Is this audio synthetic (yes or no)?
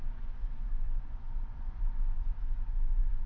yes